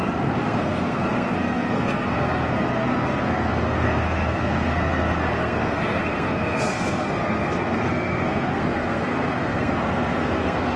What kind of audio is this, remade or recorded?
remade